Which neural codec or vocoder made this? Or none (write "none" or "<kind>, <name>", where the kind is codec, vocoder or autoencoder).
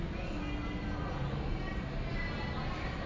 none